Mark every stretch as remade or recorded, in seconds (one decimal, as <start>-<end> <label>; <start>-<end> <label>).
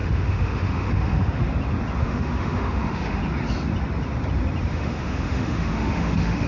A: 0.0-1.5 remade; 1.5-2.0 recorded; 2.0-3.2 remade; 3.2-4.7 recorded; 4.7-6.5 remade